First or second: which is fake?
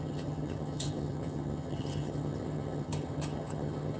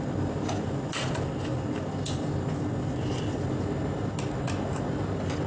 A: first